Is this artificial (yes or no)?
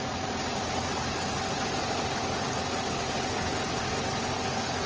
no